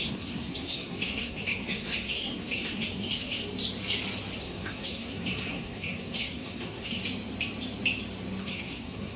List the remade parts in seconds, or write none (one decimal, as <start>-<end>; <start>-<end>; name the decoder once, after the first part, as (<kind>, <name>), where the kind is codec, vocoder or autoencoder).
0.0-3.4 (codec, SNAC); 4.4-7.0; 8.4-9.2